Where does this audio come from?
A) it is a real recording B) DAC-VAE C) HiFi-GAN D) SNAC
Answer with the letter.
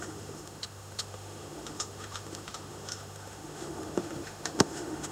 B